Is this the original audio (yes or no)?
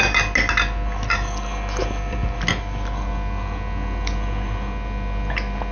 yes